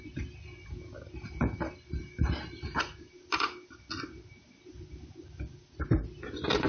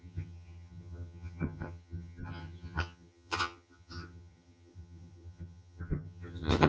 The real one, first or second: first